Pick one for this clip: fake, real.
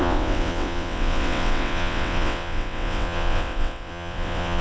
fake